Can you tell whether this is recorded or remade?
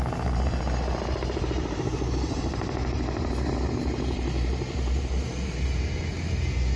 recorded